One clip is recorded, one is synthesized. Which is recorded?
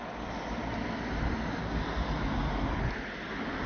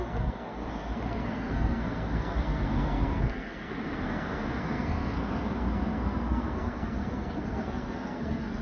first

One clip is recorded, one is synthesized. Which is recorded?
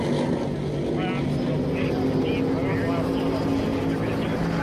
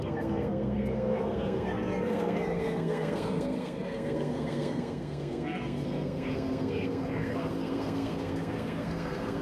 first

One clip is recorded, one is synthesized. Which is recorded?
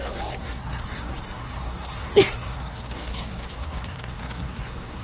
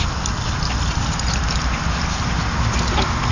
second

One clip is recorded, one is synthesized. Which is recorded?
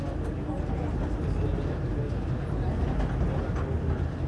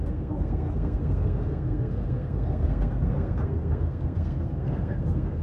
first